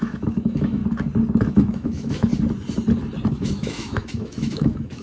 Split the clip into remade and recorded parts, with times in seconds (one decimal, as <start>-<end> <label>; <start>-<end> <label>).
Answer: 0.0-0.8 remade; 0.8-1.4 recorded; 1.4-2.3 remade; 2.3-3.3 recorded; 3.3-5.0 remade